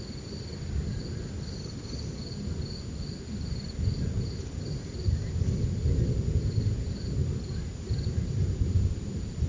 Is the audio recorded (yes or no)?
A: yes